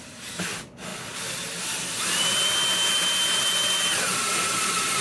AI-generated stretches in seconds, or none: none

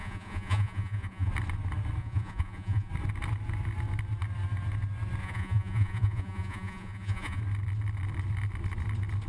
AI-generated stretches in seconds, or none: 0.0-1.3 (vocoder, Vocos); 2.0-2.9; 5.2-7.4

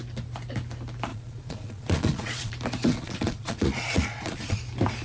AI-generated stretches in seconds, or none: 1.1-2.5 (vocoder, Vocos); 2.9-4.6

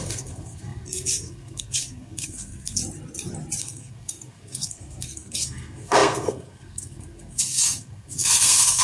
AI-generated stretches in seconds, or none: 0.0-2.8 (codec, SNAC); 3.6-8.8

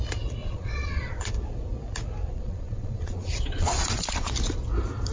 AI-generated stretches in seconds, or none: 0.4-1.3 (vocoder, Vocos); 2.2-4.3

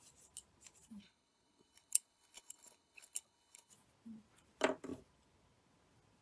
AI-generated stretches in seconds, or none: 1.0-3.7 (codec, HILCodec)

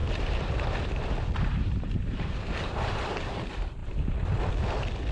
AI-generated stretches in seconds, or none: 0.0-3.1 (vocoder, BigVGAN v2)